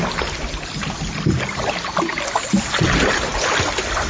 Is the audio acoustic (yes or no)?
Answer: yes